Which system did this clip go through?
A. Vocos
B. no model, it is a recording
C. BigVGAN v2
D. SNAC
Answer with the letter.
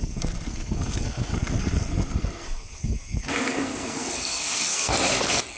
D